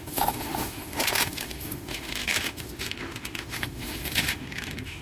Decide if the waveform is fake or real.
fake